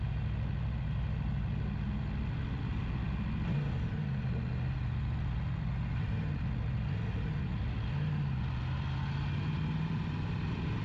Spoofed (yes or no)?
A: no